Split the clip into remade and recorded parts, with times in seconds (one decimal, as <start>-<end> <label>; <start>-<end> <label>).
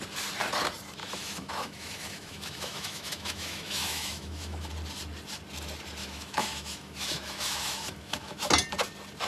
0.0-1.0 recorded; 1.0-4.7 remade; 4.7-6.0 recorded; 6.0-8.5 remade; 8.5-9.3 recorded